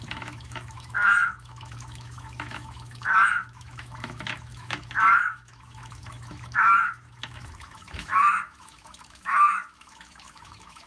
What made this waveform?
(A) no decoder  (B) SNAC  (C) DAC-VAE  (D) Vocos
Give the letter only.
C